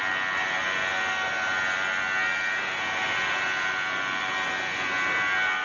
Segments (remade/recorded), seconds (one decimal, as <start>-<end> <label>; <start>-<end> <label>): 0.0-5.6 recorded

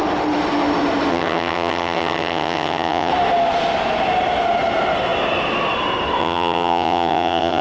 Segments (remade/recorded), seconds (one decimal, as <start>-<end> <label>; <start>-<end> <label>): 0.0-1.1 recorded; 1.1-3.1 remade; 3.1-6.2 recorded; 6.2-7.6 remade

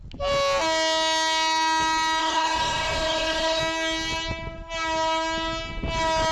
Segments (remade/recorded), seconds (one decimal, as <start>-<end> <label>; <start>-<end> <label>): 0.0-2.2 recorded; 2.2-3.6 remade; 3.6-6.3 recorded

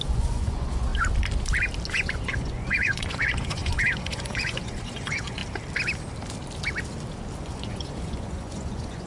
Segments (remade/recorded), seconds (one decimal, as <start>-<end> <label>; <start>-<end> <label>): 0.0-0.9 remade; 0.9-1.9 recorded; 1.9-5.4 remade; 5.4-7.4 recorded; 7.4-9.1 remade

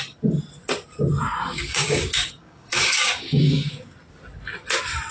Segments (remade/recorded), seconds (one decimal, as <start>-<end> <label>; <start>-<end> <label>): 0.0-1.5 recorded; 1.5-3.9 remade; 3.9-5.1 recorded

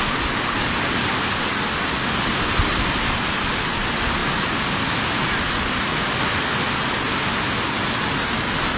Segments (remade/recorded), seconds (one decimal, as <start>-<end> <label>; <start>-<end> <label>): 0.0-8.8 recorded